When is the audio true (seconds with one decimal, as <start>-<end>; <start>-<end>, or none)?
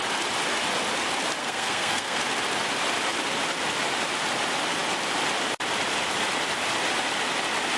0.0-1.4; 2.2-7.8